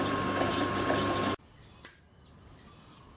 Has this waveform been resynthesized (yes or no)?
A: yes